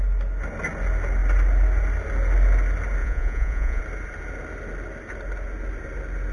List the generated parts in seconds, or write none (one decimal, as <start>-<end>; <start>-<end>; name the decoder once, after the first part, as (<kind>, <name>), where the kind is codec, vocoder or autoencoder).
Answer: 3.0-3.8 (vocoder, Vocos)